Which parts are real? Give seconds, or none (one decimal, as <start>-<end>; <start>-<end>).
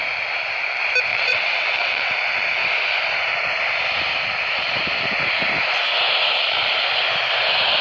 0.0-1.1; 2.1-7.8